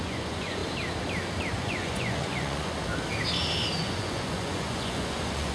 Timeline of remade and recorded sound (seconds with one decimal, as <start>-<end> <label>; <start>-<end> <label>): 0.0-0.6 remade; 0.6-1.5 recorded; 1.5-2.9 remade; 2.9-3.8 recorded; 3.8-5.5 remade